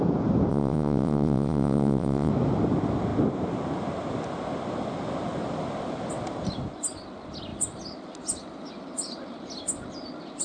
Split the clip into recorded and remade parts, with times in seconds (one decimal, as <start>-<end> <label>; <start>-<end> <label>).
0.0-0.5 recorded; 0.5-2.3 remade; 2.3-10.4 recorded